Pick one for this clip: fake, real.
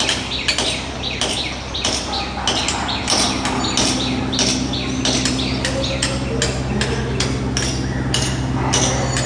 real